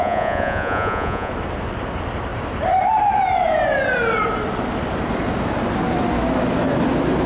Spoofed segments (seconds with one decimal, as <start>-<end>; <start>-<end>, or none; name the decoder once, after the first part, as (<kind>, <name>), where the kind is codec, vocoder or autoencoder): 0.0-1.3 (vocoder, Vocos)